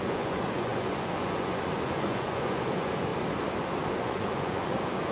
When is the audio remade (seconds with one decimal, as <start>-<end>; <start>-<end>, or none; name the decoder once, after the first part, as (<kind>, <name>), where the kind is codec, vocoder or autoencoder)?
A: 0.0-3.1 (vocoder, Vocos); 4.0-5.1